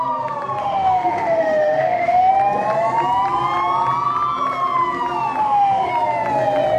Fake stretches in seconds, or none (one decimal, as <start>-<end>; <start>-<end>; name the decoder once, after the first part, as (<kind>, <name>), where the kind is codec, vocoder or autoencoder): 0.6-2.3 (autoencoder, DAC-VAE); 5.4-5.9

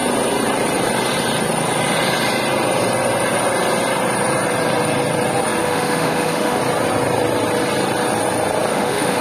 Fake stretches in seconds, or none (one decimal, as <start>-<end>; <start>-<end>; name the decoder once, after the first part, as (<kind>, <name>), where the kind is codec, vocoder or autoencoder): 5.6-6.6 (autoencoder, DAC-VAE); 8.7-9.2